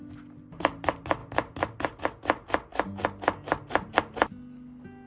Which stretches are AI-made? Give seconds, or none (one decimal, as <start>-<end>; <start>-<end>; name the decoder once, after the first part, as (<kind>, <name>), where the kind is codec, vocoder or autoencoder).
none

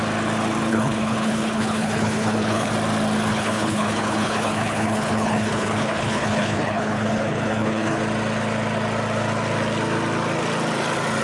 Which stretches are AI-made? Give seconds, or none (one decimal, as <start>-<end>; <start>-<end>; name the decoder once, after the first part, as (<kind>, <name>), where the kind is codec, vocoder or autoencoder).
0.7-2.7 (codec, HILCodec); 3.3-8.0

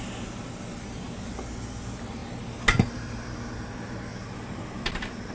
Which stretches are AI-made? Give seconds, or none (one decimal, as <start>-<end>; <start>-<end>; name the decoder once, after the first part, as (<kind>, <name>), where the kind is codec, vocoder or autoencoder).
none

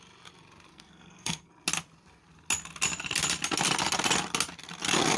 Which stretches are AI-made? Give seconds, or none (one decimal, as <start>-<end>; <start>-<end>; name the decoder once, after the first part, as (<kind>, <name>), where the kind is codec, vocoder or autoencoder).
0.7-1.5 (codec, SNAC)

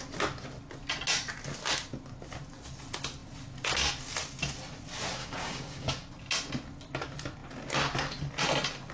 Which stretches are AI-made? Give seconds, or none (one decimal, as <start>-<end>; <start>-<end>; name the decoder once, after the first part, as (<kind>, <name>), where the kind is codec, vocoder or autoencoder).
5.2-5.9 (codec, DAC)

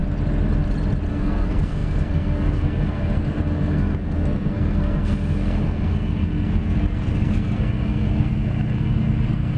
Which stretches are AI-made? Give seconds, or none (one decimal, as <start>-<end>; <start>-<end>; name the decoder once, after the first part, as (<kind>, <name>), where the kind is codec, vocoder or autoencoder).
1.1-9.6 (codec, SNAC)

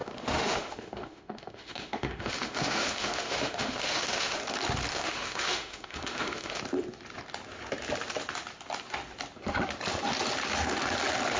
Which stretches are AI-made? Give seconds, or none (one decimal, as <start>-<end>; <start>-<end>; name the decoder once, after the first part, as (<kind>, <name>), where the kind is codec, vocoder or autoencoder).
0.0-4.4 (autoencoder, DAC-VAE); 4.9-6.6